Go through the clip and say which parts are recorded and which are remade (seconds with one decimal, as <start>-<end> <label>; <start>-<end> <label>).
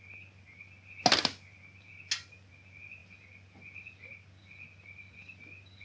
0.0-5.8 recorded